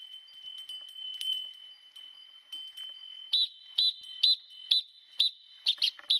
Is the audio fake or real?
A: real